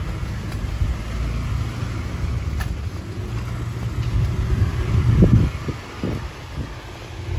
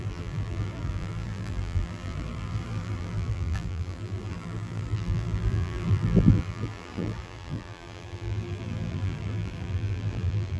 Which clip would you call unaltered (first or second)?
first